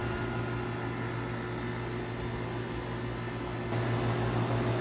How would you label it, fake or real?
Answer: real